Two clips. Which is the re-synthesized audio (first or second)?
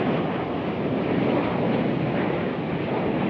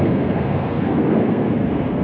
second